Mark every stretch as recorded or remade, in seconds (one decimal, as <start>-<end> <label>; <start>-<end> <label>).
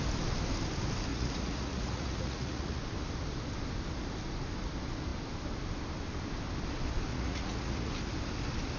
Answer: 0.0-1.1 recorded; 1.1-2.8 remade; 2.8-7.1 recorded; 7.1-7.9 remade; 7.9-8.8 recorded